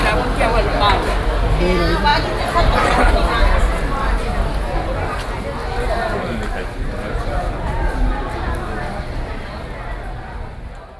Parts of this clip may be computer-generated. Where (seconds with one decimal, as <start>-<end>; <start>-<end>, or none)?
none